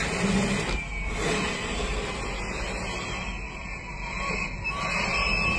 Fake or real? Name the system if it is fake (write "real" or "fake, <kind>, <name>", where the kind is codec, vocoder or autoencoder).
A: real